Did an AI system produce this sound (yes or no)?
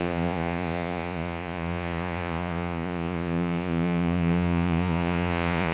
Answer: yes